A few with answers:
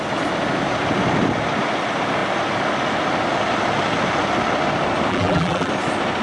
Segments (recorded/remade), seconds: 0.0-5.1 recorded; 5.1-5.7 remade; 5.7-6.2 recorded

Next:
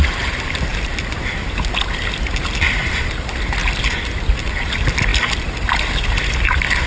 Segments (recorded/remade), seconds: 0.0-0.7 recorded; 0.7-1.7 remade; 1.7-3.6 recorded; 3.6-4.6 remade; 4.6-6.9 recorded

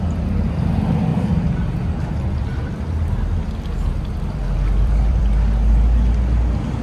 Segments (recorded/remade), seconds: 0.0-3.9 recorded; 3.9-5.2 remade; 5.2-6.8 recorded

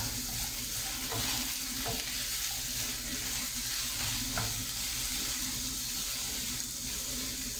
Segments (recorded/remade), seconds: 0.0-5.1 recorded; 5.1-6.8 remade; 6.8-7.6 recorded

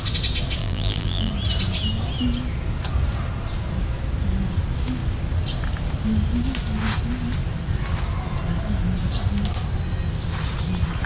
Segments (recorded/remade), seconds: 0.0-0.6 recorded; 0.6-1.3 remade; 1.3-11.1 recorded